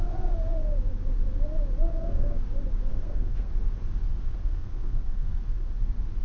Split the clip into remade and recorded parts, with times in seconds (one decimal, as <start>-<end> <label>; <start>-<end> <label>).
0.0-1.9 recorded; 1.9-2.4 remade; 2.4-2.9 recorded; 2.9-3.5 remade; 3.5-4.2 recorded; 4.2-5.7 remade; 5.7-6.2 recorded